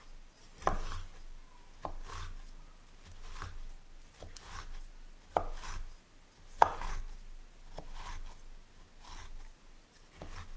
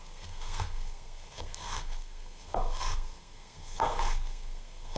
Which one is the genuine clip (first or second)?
first